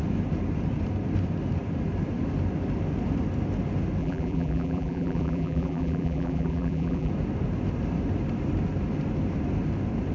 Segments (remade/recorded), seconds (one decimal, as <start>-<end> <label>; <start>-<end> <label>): 0.0-4.0 recorded; 4.0-7.1 remade; 7.1-10.1 recorded